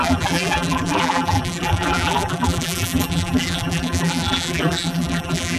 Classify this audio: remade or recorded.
remade